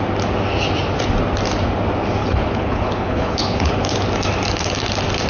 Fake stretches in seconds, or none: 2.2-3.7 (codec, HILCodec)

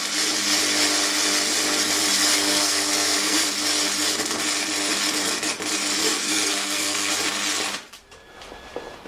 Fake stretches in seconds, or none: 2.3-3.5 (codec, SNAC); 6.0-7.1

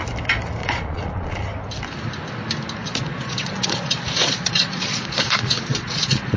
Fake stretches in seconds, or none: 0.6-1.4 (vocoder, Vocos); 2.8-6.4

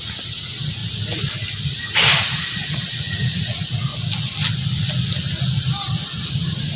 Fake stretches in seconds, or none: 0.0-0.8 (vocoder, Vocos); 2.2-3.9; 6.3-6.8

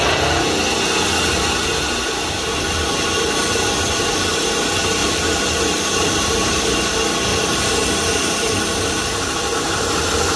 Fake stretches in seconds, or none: 5.0-6.6 (vocoder, BigVGAN v2); 7.3-10.4